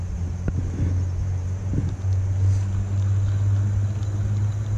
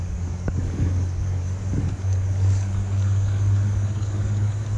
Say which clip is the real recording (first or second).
first